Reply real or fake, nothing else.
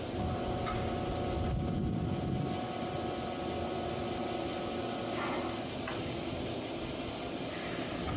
real